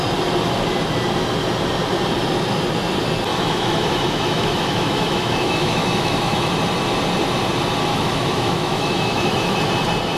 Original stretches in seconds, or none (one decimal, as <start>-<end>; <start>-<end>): 0.0-3.3; 6.5-7.9; 9.6-10.2